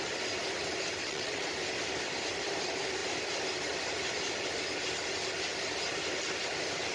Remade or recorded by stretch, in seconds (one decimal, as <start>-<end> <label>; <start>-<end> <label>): 0.0-1.0 recorded; 1.0-1.5 remade; 1.5-6.9 recorded